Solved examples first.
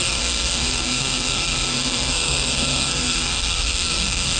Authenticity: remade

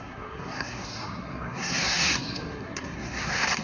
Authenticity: remade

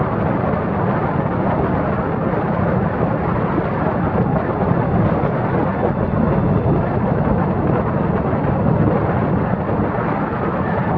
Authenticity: recorded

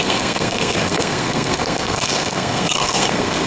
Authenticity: remade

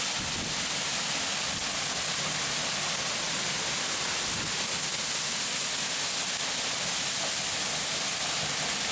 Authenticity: recorded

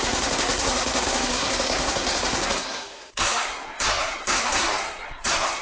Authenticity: remade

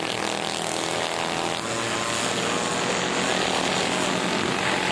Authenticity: recorded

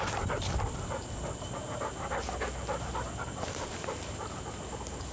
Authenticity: recorded